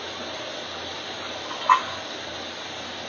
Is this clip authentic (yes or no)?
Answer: no